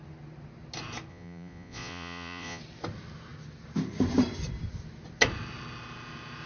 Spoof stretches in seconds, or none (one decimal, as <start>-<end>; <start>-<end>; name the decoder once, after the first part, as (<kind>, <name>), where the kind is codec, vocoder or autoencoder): 1.1-2.6 (vocoder, Vocos)